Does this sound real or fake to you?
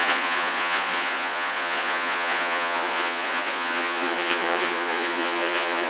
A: fake